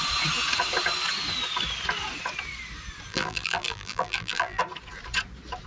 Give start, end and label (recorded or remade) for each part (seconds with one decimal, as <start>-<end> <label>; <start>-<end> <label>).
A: 0.0-3.1 recorded; 3.1-4.6 remade; 4.6-5.7 recorded